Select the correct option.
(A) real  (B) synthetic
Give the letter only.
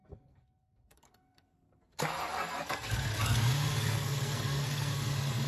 B